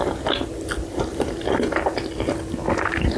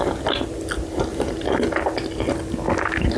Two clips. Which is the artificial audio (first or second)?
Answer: first